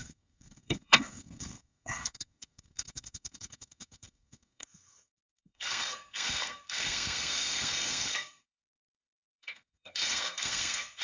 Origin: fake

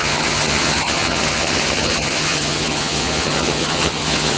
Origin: fake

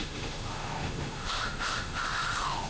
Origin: fake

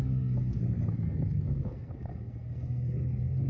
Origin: fake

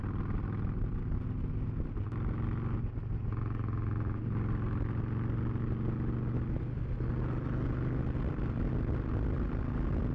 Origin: real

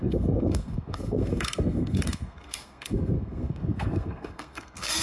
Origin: fake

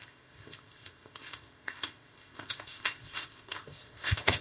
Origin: fake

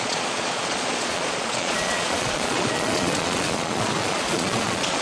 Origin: fake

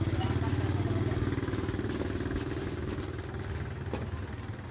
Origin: real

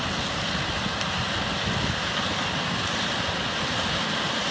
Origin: real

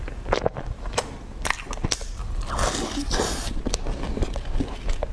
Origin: real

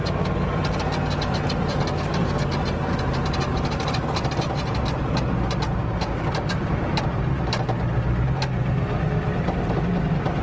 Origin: real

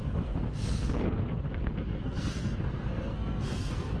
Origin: fake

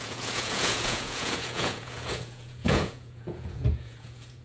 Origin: fake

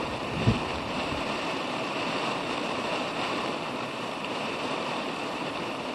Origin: fake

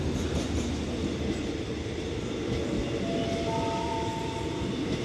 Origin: real